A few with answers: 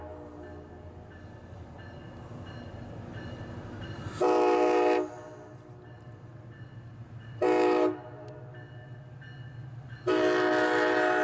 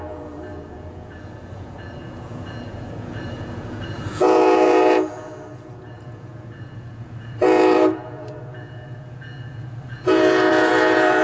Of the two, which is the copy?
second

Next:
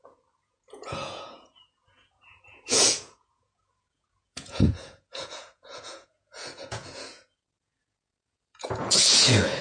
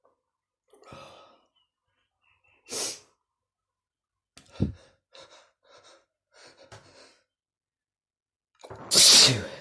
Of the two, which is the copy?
first